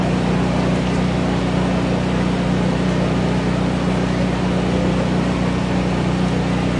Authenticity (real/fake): real